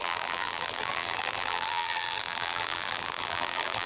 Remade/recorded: remade